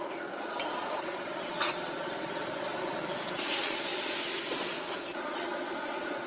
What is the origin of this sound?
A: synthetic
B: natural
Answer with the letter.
A